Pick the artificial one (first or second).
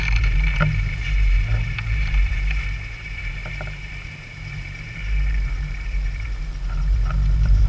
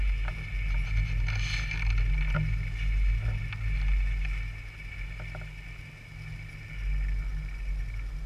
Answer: first